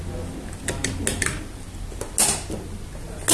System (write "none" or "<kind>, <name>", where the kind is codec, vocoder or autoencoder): none